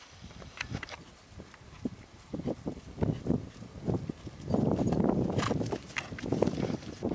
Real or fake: real